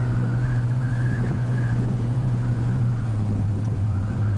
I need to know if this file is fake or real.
fake